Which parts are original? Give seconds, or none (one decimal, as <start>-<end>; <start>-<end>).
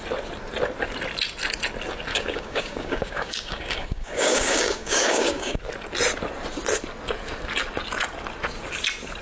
0.0-2.1; 5.6-9.2